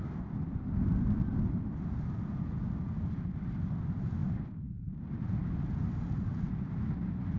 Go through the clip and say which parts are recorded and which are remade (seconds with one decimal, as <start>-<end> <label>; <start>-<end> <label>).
0.0-7.4 recorded

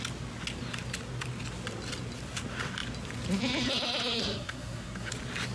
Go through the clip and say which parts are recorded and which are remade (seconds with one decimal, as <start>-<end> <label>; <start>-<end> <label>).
0.0-4.2 recorded; 4.2-5.1 remade; 5.1-5.5 recorded

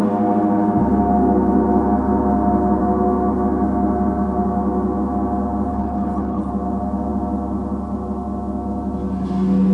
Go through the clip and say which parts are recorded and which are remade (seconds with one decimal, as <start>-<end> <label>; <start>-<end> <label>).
0.0-5.7 recorded; 5.7-6.5 remade; 6.5-9.7 recorded

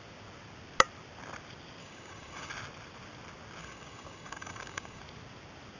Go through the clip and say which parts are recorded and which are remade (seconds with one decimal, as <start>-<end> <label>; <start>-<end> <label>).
0.0-1.8 recorded; 1.8-2.5 remade; 2.5-3.6 recorded; 3.6-5.0 remade; 5.0-5.8 recorded

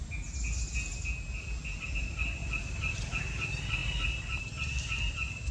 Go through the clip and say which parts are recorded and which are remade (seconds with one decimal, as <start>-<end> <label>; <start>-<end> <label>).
0.0-2.4 recorded; 2.4-3.2 remade; 3.2-5.5 recorded

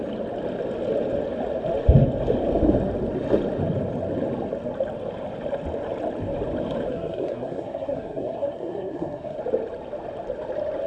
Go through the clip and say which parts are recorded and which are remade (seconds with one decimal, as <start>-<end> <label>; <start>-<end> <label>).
0.0-6.9 recorded; 6.9-9.4 remade; 9.4-10.9 recorded